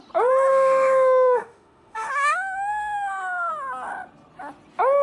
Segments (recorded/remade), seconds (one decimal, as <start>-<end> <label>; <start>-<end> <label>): 0.0-0.5 recorded; 0.5-3.5 remade; 3.5-5.0 recorded